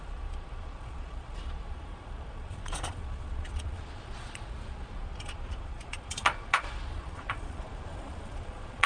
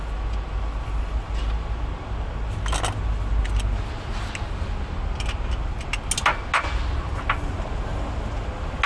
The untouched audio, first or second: second